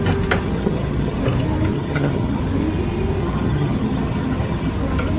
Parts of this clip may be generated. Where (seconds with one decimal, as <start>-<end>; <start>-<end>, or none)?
0.4-1.2; 1.7-2.4; 3.2-4.7